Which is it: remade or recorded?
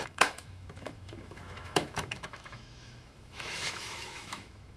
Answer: remade